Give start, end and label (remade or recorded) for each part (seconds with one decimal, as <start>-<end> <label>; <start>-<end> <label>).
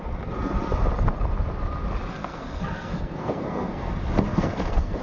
0.0-2.2 recorded; 2.2-3.9 remade; 3.9-4.3 recorded; 4.3-5.0 remade